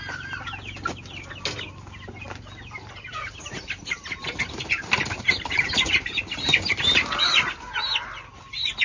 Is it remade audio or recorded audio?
recorded